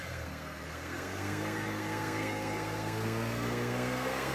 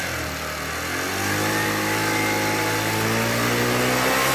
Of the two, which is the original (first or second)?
second